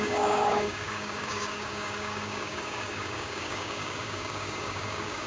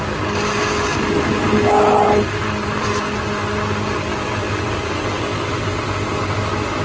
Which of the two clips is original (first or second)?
second